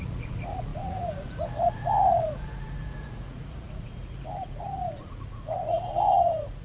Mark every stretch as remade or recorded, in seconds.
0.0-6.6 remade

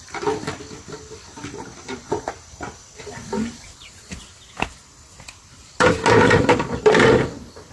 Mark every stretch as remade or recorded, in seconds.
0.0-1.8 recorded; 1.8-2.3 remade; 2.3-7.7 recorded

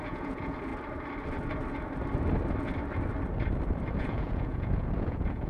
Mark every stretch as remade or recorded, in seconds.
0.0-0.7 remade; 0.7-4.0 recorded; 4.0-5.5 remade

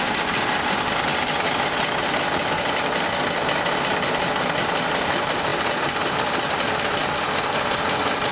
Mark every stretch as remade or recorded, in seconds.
0.0-8.3 recorded

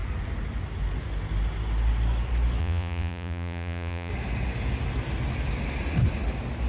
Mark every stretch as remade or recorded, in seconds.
0.0-2.6 recorded; 2.6-4.1 remade; 4.1-6.7 recorded

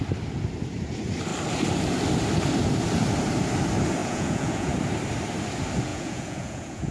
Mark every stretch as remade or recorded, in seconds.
0.0-4.0 recorded; 4.0-4.7 remade; 4.7-5.9 recorded; 5.9-6.9 remade

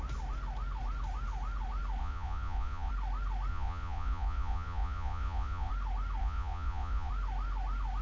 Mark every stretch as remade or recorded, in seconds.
0.0-2.0 recorded; 2.0-2.9 remade; 2.9-3.5 recorded; 3.5-5.7 remade; 5.7-6.2 recorded; 6.2-7.1 remade; 7.1-8.0 recorded

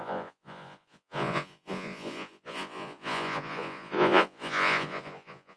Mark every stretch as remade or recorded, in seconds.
0.0-5.6 remade